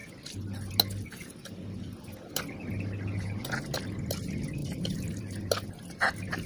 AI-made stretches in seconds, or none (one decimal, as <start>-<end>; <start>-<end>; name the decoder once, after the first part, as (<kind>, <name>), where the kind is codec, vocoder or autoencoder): 4.6-5.5 (vocoder, BigVGAN v2)